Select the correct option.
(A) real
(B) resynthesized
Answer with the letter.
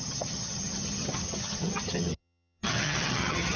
B